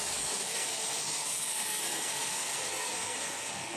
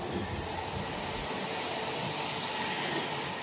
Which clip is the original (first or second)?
second